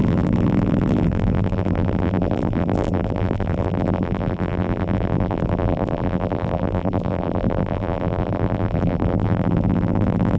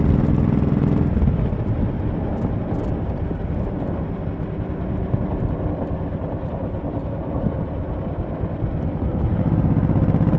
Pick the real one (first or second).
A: second